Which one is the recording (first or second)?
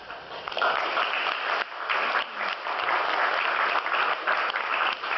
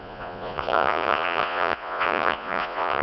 first